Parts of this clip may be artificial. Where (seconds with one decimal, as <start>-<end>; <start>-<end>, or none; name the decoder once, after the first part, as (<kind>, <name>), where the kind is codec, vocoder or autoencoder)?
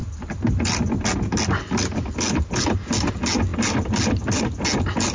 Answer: none